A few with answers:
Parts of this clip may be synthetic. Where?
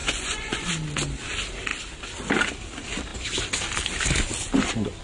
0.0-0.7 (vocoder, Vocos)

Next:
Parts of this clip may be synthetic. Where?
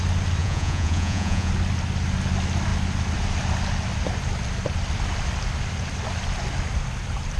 0.4-1.5 (vocoder, Vocos)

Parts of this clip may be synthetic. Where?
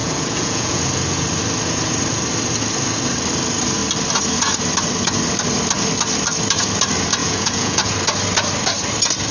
0.0-0.8 (vocoder, Vocos); 7.2-7.9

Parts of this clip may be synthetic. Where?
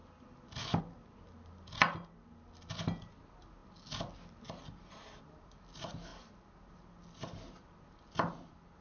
none